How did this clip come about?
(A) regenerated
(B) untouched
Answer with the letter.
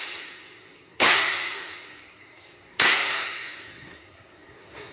A